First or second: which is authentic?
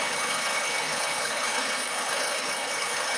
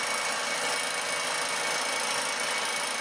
second